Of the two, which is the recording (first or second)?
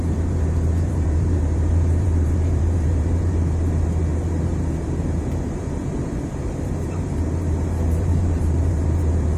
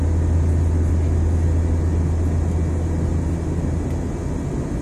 second